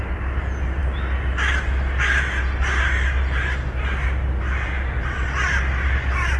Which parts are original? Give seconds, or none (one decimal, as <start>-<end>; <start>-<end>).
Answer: 0.0-6.4